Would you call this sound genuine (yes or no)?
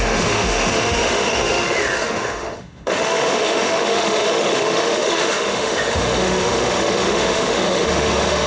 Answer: no